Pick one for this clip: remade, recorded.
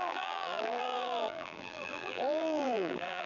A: remade